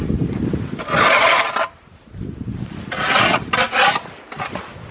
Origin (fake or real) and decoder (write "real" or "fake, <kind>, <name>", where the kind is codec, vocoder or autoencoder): real